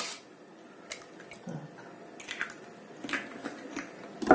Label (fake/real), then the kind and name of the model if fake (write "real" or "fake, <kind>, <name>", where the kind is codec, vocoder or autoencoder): real